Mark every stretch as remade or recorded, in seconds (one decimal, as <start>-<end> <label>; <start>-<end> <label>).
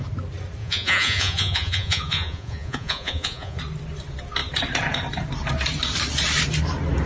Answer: 0.0-0.6 recorded; 0.6-3.6 remade; 3.6-7.1 recorded